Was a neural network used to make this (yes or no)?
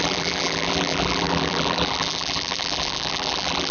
yes